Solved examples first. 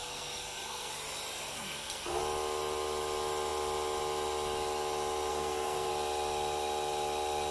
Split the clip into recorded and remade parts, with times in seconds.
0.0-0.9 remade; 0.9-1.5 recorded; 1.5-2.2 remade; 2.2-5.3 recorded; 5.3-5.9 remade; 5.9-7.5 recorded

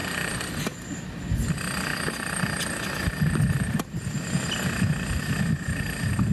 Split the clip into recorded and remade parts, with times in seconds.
0.0-1.9 recorded; 1.9-5.4 remade; 5.4-6.3 recorded

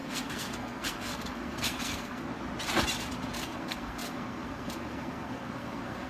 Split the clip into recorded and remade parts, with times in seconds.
0.0-2.3 remade; 2.3-3.4 recorded; 3.4-6.1 remade

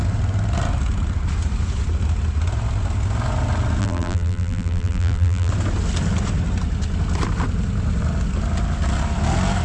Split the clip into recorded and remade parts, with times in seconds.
0.0-3.8 recorded; 3.8-5.5 remade; 5.5-9.6 recorded

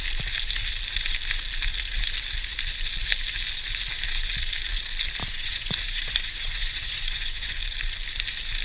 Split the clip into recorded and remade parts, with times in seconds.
0.0-5.2 recorded; 5.2-7.6 remade; 7.6-8.6 recorded

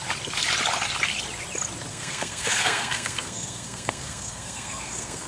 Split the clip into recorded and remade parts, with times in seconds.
0.0-1.9 recorded; 1.9-5.3 remade

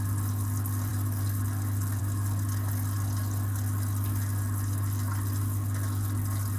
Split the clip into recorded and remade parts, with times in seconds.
0.0-6.6 recorded

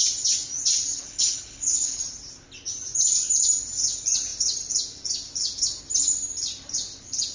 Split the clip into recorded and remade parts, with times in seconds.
0.0-0.9 recorded; 0.9-2.0 remade; 2.0-7.3 recorded